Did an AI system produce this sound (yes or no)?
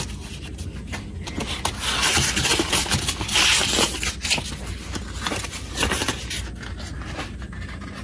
no